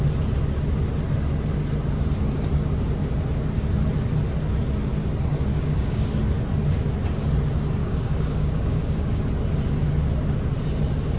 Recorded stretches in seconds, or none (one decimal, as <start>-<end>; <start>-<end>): 0.0-5.5; 6.1-7.8; 9.2-11.2